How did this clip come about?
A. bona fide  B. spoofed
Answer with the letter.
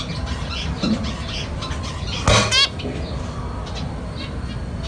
A